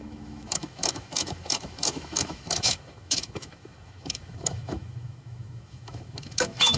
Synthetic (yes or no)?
yes